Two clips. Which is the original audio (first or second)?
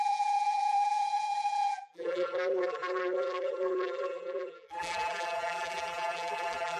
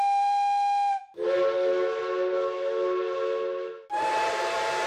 second